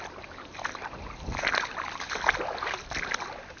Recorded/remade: recorded